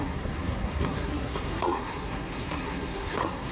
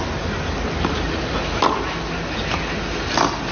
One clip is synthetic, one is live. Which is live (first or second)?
second